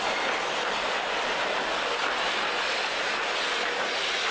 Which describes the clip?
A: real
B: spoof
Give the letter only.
A